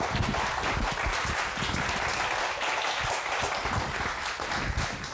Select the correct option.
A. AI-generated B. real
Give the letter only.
B